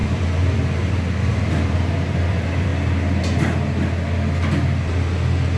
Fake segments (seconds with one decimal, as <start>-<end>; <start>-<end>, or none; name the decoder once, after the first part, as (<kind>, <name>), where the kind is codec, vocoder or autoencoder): 0.0-2.7 (vocoder, BigVGAN v2)

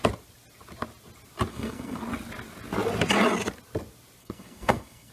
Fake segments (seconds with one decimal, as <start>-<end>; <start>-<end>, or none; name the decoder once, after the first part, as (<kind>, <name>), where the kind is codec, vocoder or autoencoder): 1.5-2.0 (codec, SNAC); 4.2-5.1

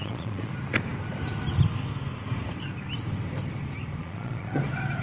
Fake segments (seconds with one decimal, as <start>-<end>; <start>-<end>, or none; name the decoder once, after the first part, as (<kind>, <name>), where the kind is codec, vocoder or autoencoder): 0.0-0.5 (vocoder, Vocos); 4.0-4.6

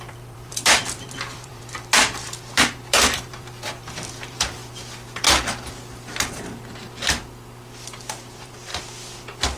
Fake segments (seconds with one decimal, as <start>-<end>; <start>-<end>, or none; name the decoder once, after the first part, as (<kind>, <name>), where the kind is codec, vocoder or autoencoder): 0.0-4.6 (vocoder, BigVGAN v2); 8.2-8.7